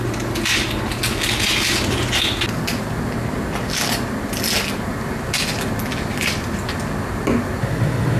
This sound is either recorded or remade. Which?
recorded